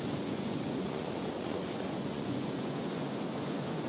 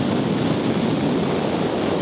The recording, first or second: second